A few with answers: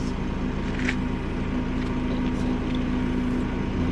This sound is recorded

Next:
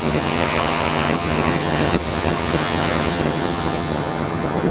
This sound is remade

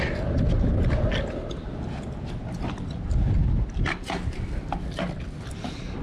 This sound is recorded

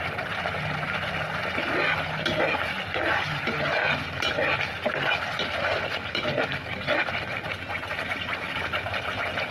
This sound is recorded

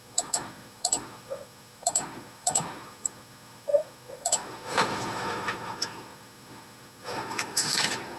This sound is remade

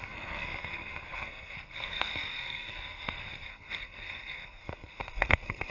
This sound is remade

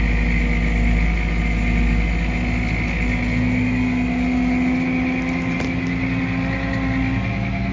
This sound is recorded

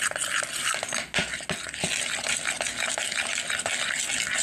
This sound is recorded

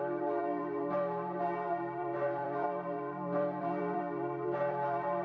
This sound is remade